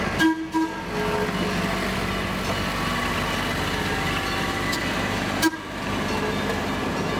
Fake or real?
real